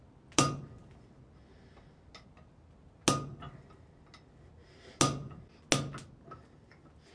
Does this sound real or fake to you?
real